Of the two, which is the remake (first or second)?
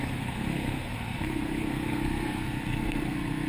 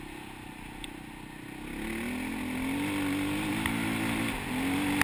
first